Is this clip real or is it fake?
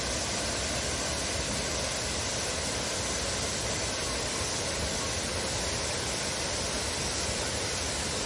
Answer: real